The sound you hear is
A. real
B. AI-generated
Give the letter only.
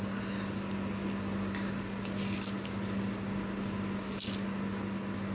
A